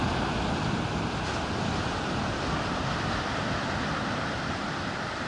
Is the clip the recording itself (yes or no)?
yes